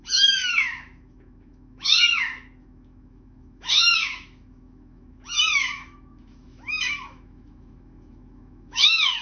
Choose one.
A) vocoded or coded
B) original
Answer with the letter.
A